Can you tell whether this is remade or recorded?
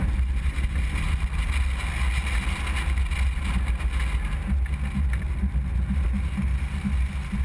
recorded